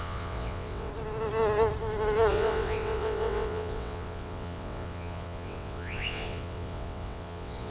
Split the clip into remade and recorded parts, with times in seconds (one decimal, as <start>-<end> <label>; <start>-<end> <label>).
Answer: 0.0-0.9 remade; 0.9-2.3 recorded; 2.3-7.7 remade